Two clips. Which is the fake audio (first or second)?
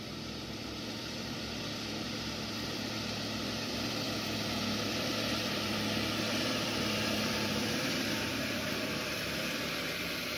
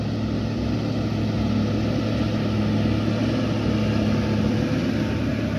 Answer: first